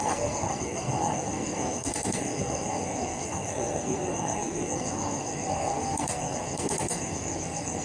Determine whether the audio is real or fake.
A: fake